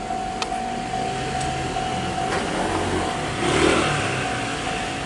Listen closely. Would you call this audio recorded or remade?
recorded